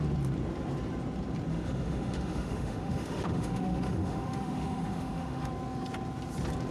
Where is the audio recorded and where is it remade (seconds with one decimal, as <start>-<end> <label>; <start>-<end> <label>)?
0.0-1.5 recorded; 1.5-5.5 remade; 5.5-6.7 recorded